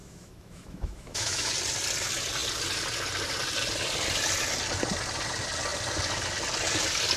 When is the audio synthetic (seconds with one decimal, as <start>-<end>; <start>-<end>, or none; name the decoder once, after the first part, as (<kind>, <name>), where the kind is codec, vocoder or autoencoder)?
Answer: 0.0-1.5 (autoencoder, DAC-VAE)